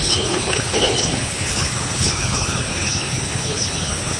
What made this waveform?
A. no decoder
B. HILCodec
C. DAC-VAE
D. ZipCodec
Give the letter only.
B